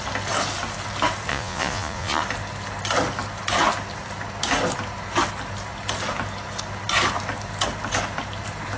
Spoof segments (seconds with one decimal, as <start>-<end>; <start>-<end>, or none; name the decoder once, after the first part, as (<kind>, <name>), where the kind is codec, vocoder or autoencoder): 1.3-2.2 (vocoder, Vocos)